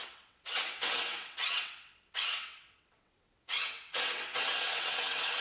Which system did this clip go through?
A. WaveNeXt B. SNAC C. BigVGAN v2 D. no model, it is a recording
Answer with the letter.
A